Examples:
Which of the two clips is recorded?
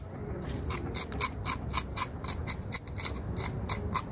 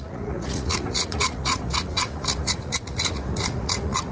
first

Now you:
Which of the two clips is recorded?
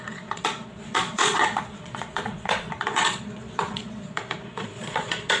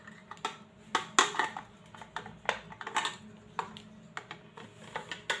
second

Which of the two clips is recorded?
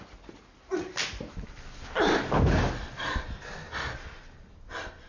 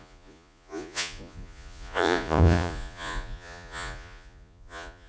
first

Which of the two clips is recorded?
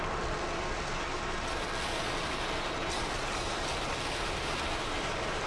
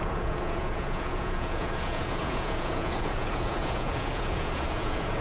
first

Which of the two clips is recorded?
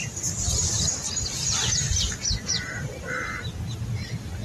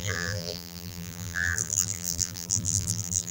first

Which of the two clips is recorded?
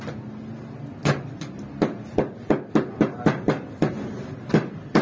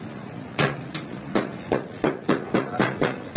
first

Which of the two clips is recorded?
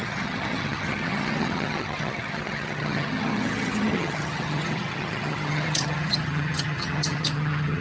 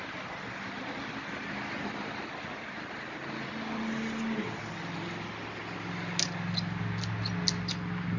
second